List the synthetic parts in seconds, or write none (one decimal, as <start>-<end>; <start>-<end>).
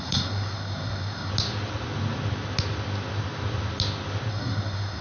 0.0-1.3; 4.3-5.0